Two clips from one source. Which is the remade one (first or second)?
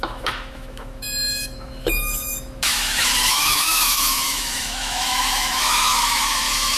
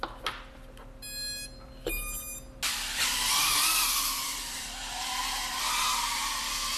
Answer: first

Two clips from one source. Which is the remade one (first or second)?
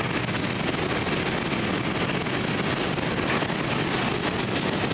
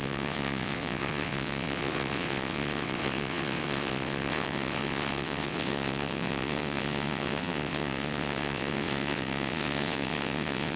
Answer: second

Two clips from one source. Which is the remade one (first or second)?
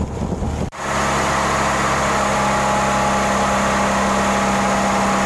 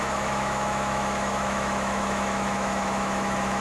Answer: second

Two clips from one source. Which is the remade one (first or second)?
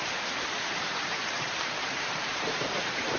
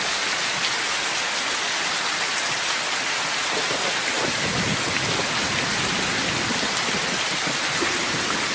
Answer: first